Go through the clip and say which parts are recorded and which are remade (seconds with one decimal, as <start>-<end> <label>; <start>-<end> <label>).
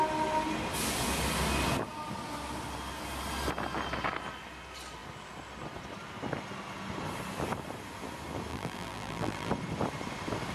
0.0-8.5 recorded; 8.5-9.5 remade; 9.5-10.5 recorded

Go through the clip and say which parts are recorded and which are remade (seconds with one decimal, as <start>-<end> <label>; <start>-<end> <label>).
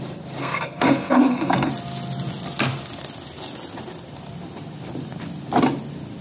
0.0-0.4 recorded; 0.4-1.7 remade; 1.7-6.2 recorded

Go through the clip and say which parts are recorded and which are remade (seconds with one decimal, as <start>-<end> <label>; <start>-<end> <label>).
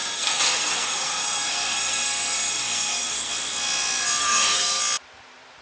0.0-3.3 remade; 3.3-4.2 recorded; 4.2-4.8 remade; 4.8-5.6 recorded